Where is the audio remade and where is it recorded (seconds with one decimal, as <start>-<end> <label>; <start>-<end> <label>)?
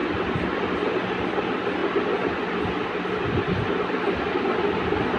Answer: 0.0-5.2 recorded